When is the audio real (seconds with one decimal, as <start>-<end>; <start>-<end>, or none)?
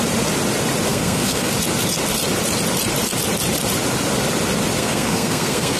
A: 0.0-0.9; 1.5-4.8